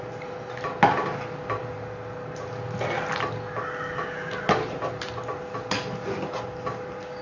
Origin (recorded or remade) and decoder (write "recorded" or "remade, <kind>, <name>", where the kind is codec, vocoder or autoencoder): recorded